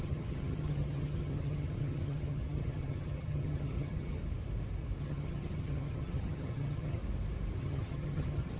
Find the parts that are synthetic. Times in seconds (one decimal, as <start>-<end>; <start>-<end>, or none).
0.0-4.2; 5.0-7.0; 7.6-8.6